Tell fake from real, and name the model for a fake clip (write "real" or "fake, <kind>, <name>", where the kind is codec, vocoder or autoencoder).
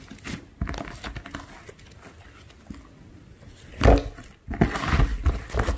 real